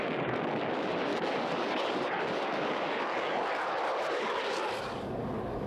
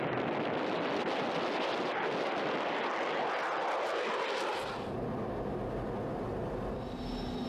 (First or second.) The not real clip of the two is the first